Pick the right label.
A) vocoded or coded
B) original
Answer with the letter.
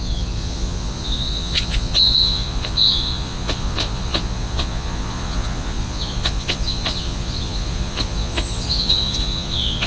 A